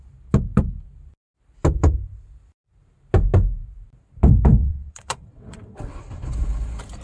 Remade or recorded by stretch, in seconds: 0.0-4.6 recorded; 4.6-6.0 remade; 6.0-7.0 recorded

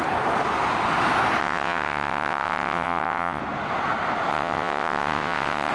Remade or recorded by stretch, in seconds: 0.0-1.4 recorded; 1.4-3.4 remade; 3.4-4.3 recorded; 4.3-5.7 remade

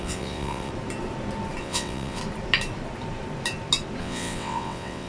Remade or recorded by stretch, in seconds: 0.0-0.7 remade; 0.7-1.6 recorded; 1.6-2.2 remade; 2.2-4.0 recorded; 4.0-5.1 remade

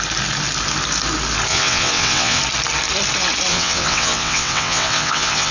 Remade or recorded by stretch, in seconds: 0.0-1.5 recorded; 1.5-2.4 remade; 2.4-3.5 recorded; 3.5-5.5 remade

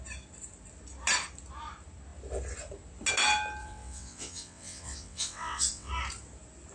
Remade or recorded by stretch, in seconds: 0.0-3.6 recorded; 3.6-5.9 remade; 5.9-6.7 recorded